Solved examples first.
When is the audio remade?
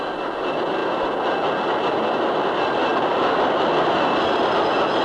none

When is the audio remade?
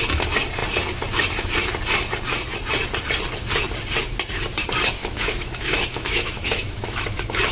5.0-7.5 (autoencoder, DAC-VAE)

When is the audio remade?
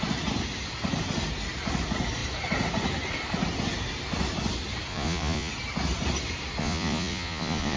4.9-5.5 (vocoder, Vocos); 6.6-7.8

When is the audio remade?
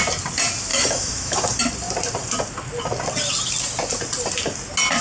0.7-1.6 (autoencoder, DAC-VAE)